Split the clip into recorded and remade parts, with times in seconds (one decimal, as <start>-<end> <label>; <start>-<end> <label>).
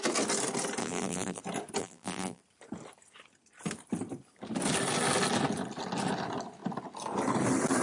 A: 0.0-0.8 recorded; 0.8-1.4 remade; 1.4-1.8 recorded; 1.8-2.4 remade; 2.4-7.8 recorded